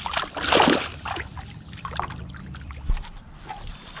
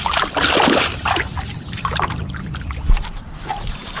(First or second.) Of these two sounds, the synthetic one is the second